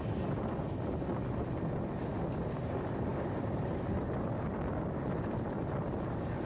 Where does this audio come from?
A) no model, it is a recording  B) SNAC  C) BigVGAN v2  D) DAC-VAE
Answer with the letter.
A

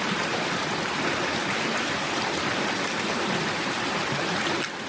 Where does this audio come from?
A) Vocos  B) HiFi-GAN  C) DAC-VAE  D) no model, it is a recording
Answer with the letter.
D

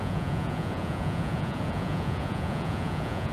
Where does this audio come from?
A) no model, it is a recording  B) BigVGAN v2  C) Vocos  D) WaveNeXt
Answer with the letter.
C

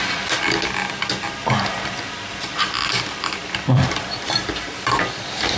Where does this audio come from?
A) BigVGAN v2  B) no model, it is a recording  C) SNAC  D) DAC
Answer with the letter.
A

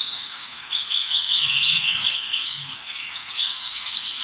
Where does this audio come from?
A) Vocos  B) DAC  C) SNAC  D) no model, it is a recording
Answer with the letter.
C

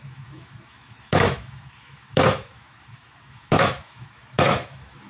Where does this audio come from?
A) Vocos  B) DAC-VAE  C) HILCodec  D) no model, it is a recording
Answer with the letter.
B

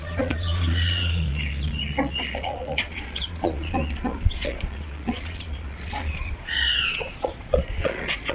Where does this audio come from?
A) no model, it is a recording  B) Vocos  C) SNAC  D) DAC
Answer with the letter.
B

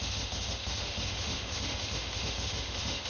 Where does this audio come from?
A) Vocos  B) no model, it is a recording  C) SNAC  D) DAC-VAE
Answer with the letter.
D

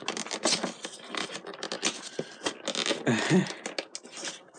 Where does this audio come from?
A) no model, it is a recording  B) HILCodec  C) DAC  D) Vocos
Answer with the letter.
A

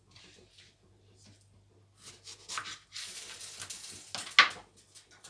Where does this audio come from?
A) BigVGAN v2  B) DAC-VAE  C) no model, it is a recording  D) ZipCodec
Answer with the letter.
C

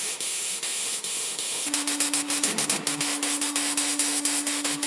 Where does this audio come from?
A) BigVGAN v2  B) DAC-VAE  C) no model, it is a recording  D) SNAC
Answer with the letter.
B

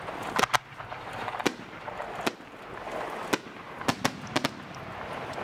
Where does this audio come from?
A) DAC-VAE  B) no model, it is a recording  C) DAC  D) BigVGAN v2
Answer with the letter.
B